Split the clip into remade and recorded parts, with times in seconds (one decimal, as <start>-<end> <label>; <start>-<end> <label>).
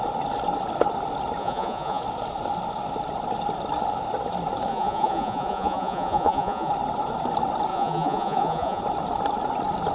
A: 0.0-1.4 recorded; 1.4-2.0 remade; 2.0-4.7 recorded; 4.7-6.7 remade; 6.7-7.7 recorded; 7.7-8.8 remade; 8.8-9.9 recorded